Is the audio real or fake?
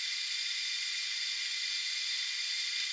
fake